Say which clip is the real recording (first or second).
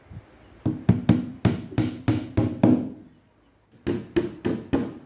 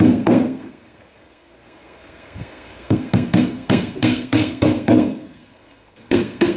first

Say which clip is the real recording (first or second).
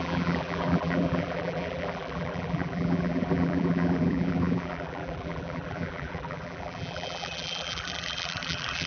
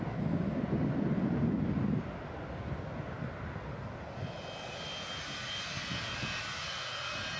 second